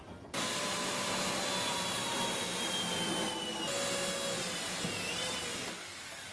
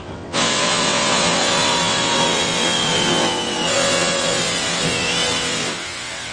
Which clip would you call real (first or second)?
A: first